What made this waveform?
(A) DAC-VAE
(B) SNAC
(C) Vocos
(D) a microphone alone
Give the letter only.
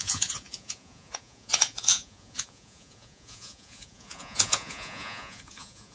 C